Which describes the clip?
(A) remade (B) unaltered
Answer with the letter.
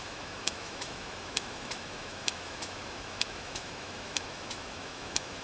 A